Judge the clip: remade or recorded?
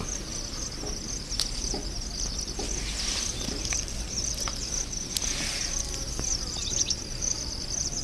remade